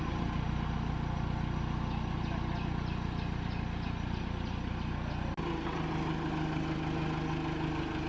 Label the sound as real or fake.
real